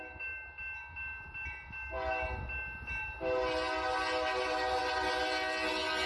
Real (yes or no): yes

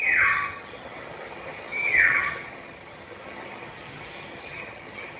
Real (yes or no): no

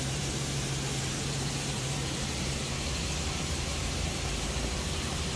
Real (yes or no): no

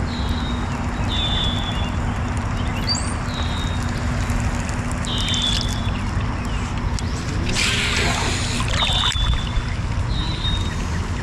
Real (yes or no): yes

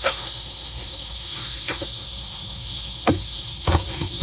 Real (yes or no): no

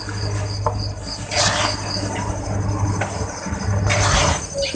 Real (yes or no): yes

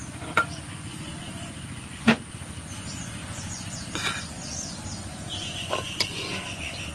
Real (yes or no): no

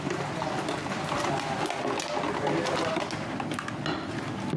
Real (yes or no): yes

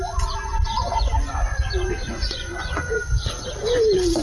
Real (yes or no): no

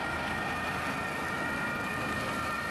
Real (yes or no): yes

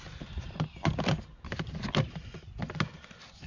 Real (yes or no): yes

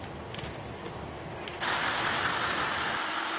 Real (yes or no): yes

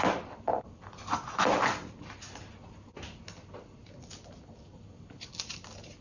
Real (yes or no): yes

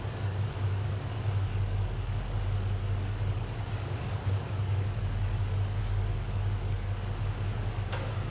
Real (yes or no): no